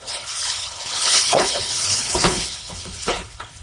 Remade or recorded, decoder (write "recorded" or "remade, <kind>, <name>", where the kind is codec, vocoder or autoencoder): remade, codec, HILCodec